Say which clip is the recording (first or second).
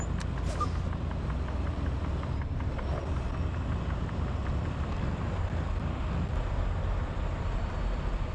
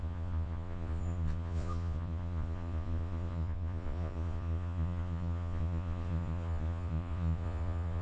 first